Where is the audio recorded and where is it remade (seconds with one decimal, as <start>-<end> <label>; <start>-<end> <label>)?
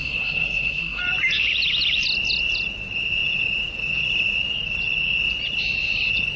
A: 0.0-1.0 remade; 1.0-6.4 recorded